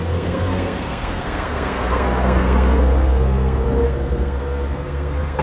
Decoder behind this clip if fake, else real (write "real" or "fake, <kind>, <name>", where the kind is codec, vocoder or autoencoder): fake, codec, SNAC